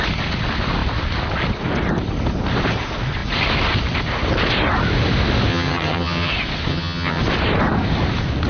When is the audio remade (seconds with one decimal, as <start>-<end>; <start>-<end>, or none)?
5.5-6.3; 6.7-7.2

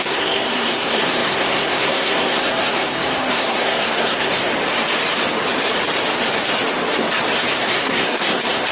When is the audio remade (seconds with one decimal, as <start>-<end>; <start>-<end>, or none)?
0.0-4.5; 7.5-8.7

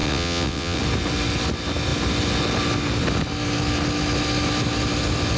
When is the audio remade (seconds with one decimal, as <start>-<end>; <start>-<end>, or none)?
0.0-0.8

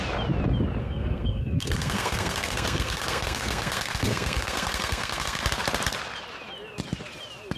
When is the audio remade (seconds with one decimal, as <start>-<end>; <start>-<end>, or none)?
0.8-5.4

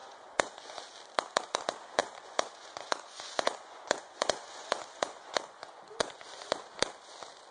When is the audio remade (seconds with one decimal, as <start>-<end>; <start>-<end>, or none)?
0.0-0.8; 2.0-6.5

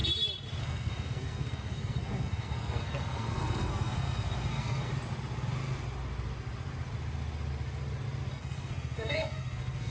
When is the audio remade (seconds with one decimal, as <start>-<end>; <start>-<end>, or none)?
0.6-4.9; 8.3-9.9

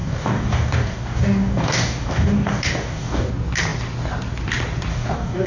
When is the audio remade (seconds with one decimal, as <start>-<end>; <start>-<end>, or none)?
0.0-3.3; 4.9-5.5

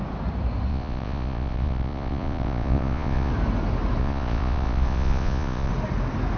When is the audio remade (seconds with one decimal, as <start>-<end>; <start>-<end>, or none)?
0.7-3.3; 4.0-5.7